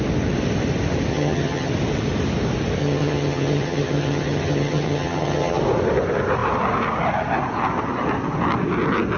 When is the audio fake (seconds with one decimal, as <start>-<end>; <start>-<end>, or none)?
1.1-1.7; 2.8-5.6